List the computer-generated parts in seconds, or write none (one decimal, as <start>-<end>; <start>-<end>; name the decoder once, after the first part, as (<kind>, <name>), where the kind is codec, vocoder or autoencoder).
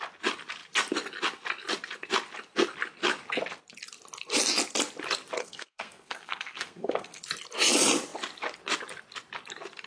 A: 5.4-7.2 (codec, SNAC)